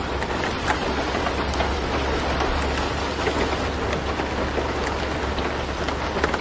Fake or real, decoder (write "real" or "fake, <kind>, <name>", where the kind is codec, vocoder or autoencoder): real